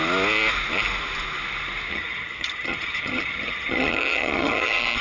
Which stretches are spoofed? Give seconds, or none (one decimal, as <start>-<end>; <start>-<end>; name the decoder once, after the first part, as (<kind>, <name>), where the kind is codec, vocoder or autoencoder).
1.9-5.0 (vocoder, HiFi-GAN)